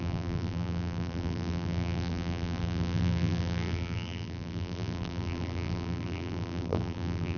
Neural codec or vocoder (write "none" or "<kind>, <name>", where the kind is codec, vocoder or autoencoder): vocoder, BigVGAN v2